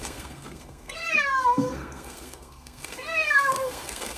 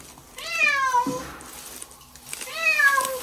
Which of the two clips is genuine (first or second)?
second